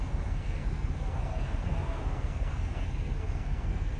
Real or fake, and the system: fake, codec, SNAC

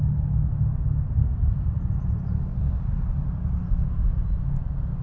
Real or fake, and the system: real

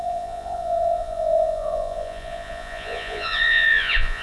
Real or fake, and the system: fake, vocoder, Vocos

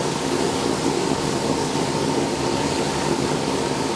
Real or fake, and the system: fake, codec, DAC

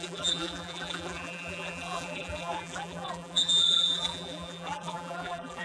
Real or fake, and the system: fake, vocoder, BigVGAN v2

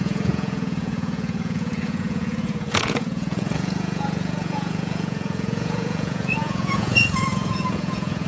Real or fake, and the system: fake, vocoder, Vocos